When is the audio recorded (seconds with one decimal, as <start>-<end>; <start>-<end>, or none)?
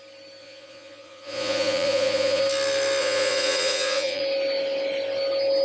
0.0-0.4; 2.4-3.0; 4.2-5.6